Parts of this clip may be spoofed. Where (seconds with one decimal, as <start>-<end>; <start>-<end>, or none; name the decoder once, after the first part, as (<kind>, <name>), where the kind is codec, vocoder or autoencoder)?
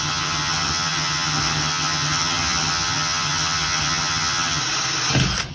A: 0.0-4.6 (vocoder, HiFi-GAN)